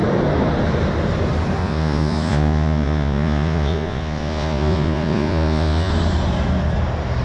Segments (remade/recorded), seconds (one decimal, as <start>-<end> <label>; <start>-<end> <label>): 0.0-1.6 recorded; 1.6-5.9 remade; 5.9-7.2 recorded

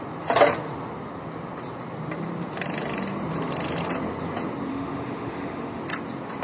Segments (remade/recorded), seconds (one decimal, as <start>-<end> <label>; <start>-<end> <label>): 0.0-4.7 recorded; 4.7-5.8 remade; 5.8-6.4 recorded

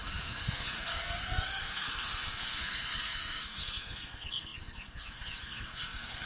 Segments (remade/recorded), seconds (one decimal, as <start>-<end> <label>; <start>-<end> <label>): 0.0-6.2 remade

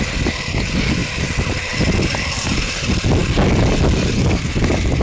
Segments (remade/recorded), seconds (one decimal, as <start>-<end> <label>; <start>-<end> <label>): 0.0-1.0 recorded; 1.0-2.5 remade; 2.5-5.0 recorded

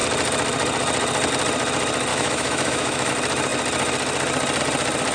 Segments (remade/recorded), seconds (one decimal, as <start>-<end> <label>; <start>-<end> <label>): 0.0-2.1 recorded; 2.1-3.1 remade; 3.1-5.1 recorded